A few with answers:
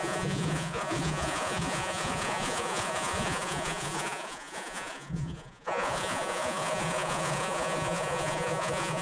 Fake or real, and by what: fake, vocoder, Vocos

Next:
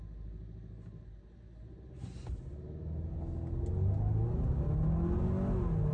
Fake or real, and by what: real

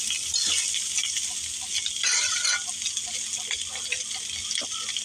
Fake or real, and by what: real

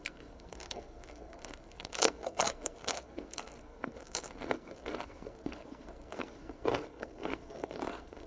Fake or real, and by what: fake, codec, SNAC